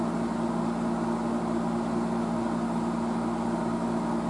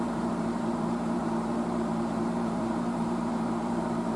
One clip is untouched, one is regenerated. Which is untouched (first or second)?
first